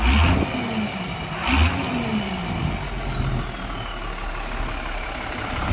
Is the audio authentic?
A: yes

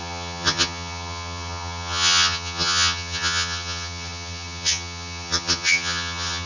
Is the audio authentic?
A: no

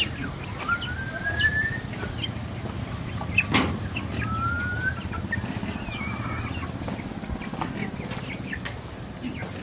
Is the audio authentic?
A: yes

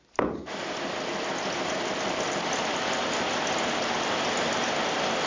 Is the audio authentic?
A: yes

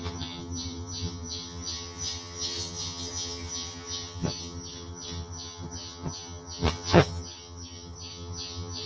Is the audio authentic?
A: no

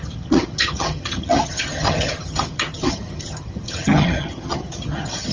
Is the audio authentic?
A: no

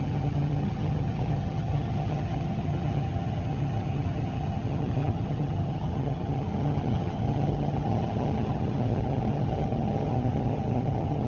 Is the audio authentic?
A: no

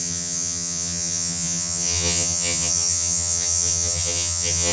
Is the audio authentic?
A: no